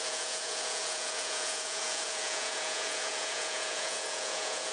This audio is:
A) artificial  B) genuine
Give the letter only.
A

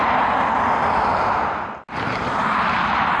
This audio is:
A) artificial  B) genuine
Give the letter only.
B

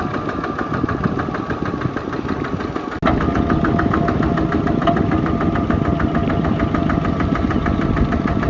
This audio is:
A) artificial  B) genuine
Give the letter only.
B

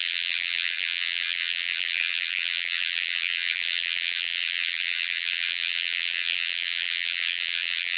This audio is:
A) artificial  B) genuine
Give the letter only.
A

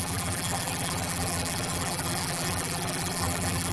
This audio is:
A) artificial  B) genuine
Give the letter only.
A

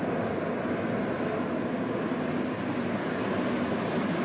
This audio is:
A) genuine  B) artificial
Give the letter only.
A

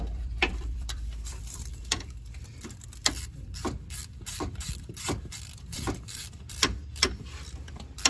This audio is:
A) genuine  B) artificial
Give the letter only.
B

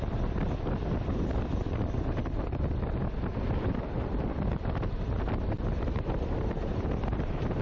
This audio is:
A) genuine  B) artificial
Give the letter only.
B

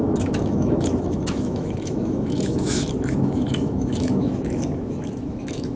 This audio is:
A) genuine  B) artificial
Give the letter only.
B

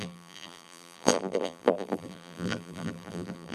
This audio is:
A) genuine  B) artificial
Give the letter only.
B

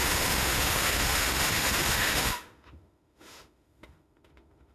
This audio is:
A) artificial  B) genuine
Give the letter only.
A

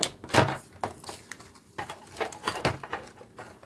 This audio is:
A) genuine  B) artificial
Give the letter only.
A